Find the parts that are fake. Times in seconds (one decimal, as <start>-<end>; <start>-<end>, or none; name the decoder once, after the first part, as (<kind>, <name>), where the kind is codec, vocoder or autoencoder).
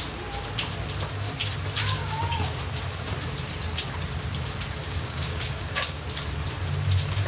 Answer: 2.0-2.6 (codec, DAC); 4.8-6.0